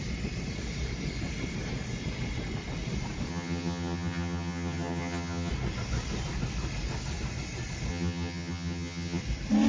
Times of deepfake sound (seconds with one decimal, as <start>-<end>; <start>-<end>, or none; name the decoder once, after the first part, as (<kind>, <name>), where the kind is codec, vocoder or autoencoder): 3.3-5.5 (vocoder, HiFi-GAN); 7.9-9.2